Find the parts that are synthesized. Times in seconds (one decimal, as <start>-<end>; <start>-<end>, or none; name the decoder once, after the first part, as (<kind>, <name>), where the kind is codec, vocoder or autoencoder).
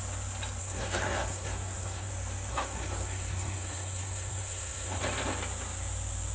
0.6-2.1 (codec, SNAC); 2.5-5.0